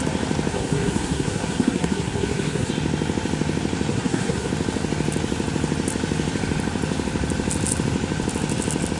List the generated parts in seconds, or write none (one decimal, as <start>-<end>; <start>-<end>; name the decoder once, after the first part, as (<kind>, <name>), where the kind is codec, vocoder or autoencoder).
0.5-2.7 (codec, SNAC); 3.9-4.5

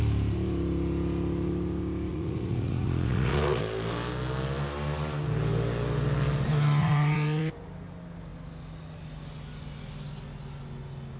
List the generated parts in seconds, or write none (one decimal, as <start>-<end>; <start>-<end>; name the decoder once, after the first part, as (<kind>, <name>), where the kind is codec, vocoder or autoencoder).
2.1-3.6 (vocoder, Vocos); 6.8-7.5

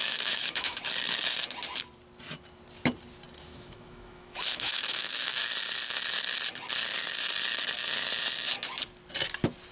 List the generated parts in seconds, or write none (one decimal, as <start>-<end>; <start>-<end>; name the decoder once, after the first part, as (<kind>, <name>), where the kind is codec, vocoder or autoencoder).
0.0-0.8 (autoencoder, DAC-VAE); 3.4-5.4

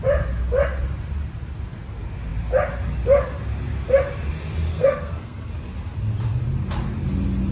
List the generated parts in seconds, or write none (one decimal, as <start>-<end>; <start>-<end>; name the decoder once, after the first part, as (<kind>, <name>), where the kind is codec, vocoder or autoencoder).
4.7-5.5 (codec, SNAC)

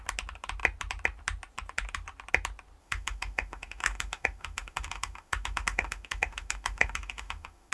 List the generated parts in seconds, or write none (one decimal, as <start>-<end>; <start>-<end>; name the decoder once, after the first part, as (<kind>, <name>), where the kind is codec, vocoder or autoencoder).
2.8-7.7 (autoencoder, DAC-VAE)

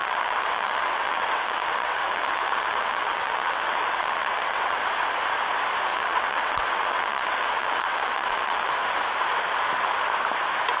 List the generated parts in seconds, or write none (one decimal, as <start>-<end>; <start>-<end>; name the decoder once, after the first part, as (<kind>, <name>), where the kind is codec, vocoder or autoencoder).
0.0-4.8 (vocoder, WaveNeXt); 5.9-8.7

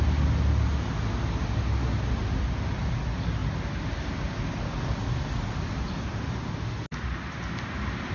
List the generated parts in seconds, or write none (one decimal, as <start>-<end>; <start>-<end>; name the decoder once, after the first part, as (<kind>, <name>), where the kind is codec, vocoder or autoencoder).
none

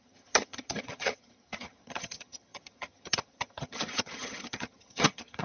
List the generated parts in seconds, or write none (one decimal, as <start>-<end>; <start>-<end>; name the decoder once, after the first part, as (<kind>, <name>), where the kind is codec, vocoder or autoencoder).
0.0-5.4 (vocoder, HiFi-GAN)